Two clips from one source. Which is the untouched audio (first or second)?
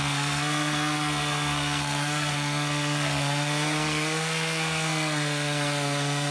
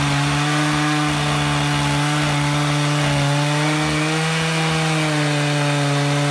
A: second